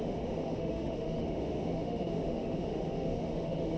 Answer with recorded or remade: remade